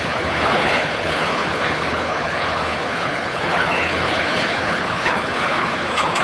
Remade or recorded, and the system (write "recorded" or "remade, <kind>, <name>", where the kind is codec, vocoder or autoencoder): remade, codec, HILCodec